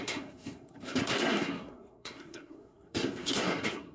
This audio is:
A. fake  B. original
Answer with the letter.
A